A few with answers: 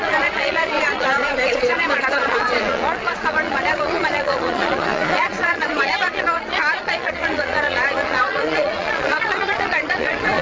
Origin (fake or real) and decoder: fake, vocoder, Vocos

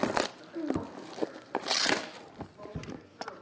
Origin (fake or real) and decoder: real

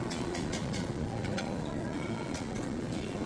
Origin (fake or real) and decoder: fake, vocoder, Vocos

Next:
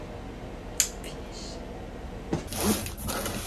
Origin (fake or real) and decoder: real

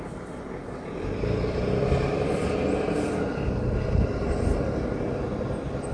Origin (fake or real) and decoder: real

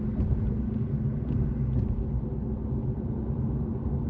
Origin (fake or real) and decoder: real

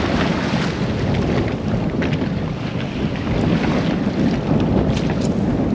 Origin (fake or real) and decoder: real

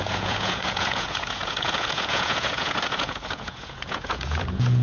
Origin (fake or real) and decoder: fake, vocoder, Vocos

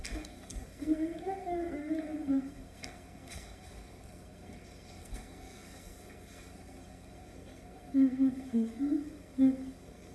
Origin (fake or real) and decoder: fake, codec, SNAC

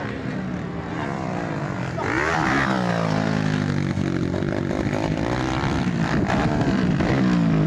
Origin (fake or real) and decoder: real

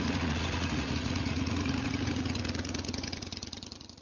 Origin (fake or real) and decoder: fake, vocoder, Vocos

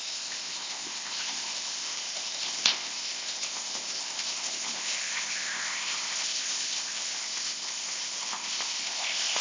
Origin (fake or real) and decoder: fake, codec, ZipCodec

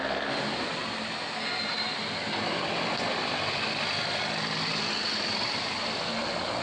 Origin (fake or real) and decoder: real